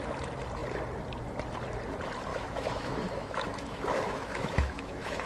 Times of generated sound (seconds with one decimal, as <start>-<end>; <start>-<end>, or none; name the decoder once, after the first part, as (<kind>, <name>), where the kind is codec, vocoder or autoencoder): 2.3-5.3 (autoencoder, DAC-VAE)